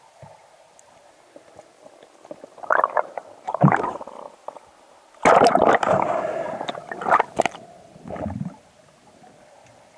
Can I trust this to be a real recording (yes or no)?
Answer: yes